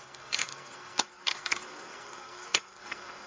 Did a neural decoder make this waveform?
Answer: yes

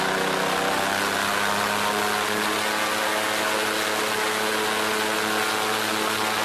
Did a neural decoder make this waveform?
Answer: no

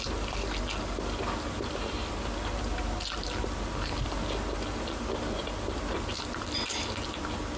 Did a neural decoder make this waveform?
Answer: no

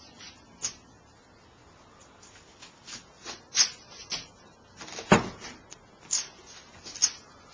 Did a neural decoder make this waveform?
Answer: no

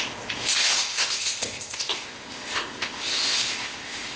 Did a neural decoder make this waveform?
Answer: yes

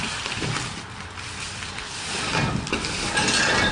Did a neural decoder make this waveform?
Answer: no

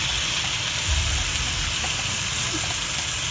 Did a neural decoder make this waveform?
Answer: no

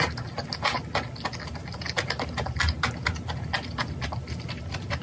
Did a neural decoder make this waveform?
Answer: no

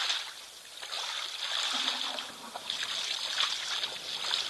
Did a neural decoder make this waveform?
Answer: no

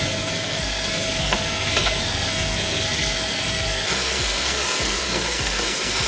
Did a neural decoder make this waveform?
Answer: yes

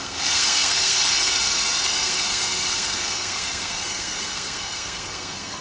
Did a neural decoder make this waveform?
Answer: yes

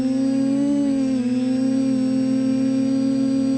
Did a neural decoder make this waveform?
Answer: no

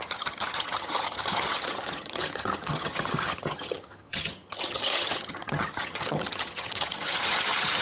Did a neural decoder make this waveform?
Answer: yes